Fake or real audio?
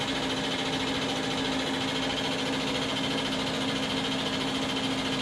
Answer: real